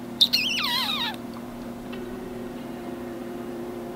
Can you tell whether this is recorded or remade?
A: remade